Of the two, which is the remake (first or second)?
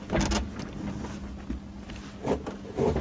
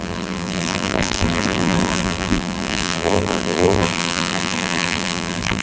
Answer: second